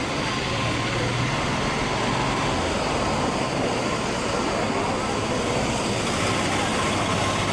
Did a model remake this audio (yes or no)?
no